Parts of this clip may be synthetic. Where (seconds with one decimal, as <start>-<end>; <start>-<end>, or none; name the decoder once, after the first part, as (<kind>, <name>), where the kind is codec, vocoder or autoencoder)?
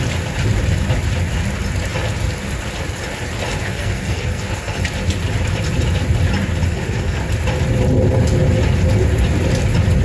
3.6-4.8 (codec, SNAC); 6.7-7.2